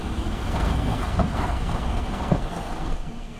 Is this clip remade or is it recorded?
remade